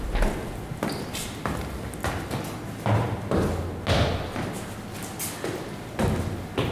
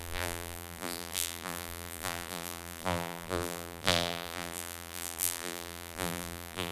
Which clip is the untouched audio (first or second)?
first